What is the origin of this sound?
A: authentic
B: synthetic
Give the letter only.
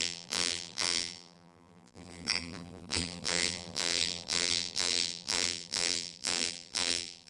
B